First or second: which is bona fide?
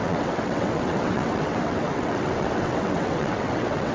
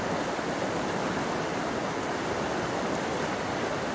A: second